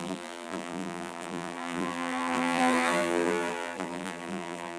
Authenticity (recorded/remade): remade